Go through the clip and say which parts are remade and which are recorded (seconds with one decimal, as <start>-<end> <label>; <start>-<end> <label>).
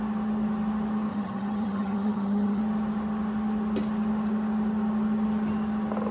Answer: 0.0-1.1 recorded; 1.1-2.6 remade; 2.6-6.1 recorded